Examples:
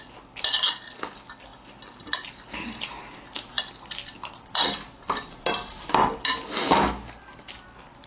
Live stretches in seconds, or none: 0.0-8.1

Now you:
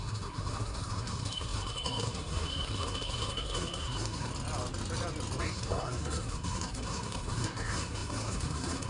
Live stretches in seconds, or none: 4.3-5.4